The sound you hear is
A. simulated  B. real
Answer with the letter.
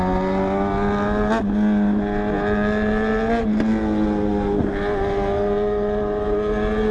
B